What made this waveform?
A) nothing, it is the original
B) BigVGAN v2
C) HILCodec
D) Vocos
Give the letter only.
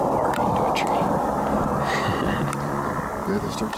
B